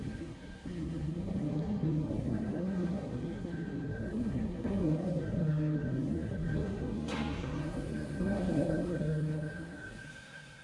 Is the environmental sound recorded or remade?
remade